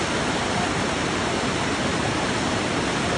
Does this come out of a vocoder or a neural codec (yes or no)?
no